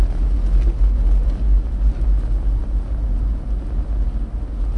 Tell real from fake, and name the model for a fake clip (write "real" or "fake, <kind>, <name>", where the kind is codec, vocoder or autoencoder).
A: real